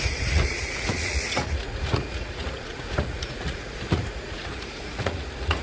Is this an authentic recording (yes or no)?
no